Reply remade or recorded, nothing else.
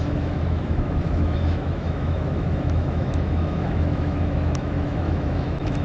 remade